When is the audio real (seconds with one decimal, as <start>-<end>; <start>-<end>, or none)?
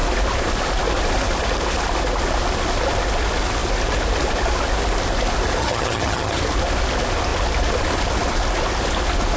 0.0-5.6; 6.4-9.4